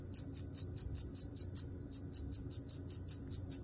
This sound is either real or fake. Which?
real